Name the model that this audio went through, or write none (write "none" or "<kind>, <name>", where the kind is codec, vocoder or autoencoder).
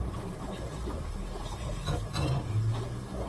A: none